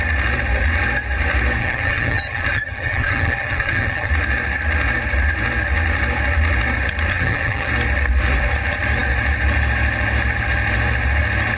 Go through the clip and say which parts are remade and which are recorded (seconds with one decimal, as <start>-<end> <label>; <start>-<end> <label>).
0.0-1.6 recorded; 1.6-4.1 remade; 4.1-7.1 recorded; 7.1-7.7 remade; 7.7-11.6 recorded